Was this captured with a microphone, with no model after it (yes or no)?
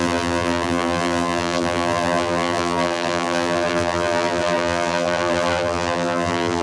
no